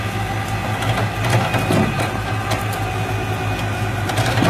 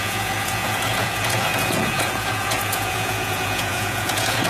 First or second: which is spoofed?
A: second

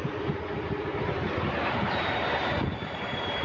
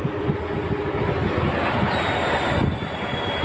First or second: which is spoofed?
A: first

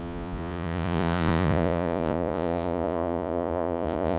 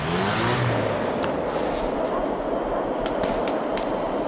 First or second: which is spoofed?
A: first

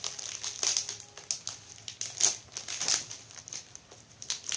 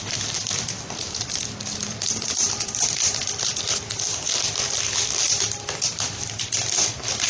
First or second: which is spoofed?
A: second